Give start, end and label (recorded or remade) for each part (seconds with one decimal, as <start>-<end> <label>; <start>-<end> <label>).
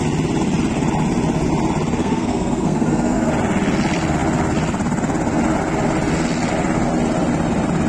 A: 0.0-2.0 recorded; 2.0-3.3 remade; 3.3-7.9 recorded